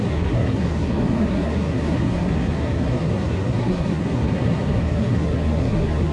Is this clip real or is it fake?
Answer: fake